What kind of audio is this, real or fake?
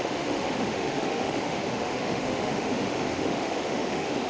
fake